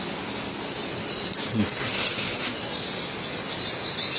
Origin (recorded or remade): recorded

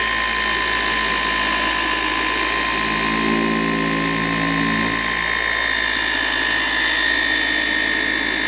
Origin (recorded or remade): recorded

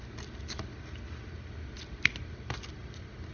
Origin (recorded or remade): recorded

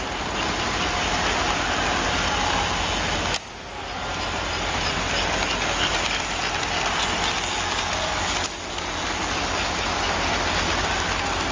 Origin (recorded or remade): recorded